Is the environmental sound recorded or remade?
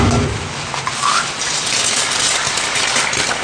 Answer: recorded